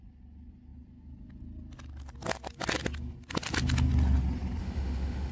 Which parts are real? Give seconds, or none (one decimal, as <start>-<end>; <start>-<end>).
0.0-4.6